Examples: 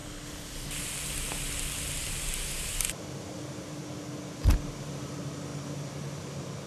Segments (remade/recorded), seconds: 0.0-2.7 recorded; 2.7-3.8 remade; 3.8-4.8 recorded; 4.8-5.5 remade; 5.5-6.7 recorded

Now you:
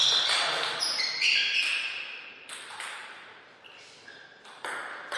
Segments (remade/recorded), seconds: 0.0-1.4 recorded; 1.4-5.2 remade